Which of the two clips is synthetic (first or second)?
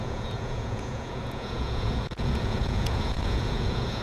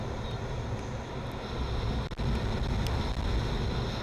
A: first